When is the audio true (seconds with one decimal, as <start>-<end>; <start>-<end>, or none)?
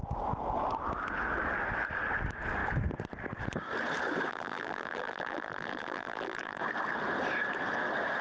0.0-4.3; 6.6-8.2